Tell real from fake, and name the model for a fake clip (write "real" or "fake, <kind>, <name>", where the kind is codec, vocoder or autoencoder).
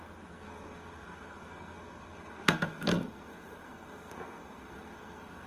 fake, codec, SNAC